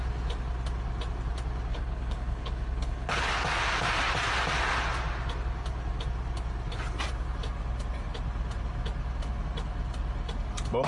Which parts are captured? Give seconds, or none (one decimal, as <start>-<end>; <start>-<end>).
0.0-1.7; 3.2-10.9